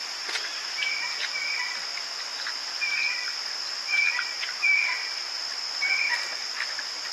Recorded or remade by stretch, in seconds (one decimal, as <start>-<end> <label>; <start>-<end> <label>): 0.0-5.0 recorded; 5.0-7.1 remade